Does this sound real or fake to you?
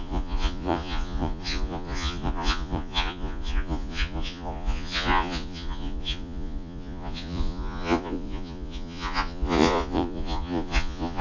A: fake